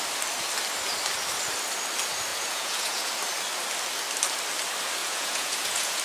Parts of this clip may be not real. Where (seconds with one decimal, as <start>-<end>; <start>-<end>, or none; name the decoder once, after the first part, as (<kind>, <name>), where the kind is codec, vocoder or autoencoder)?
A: 2.3-3.1 (vocoder, Vocos); 5.0-6.0